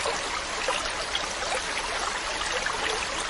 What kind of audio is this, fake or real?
real